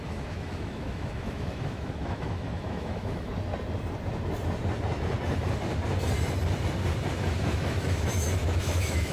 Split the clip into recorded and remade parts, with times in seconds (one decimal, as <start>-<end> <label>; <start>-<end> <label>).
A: 0.0-3.3 remade; 3.3-7.5 recorded; 7.5-9.1 remade